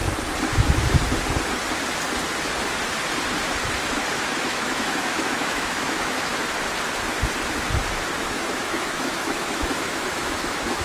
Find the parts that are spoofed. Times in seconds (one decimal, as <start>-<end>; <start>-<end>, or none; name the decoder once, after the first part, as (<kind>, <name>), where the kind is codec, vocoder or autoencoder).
4.2-6.3 (autoencoder, DAC-VAE); 8.2-10.8